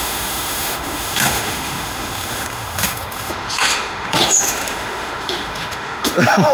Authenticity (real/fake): fake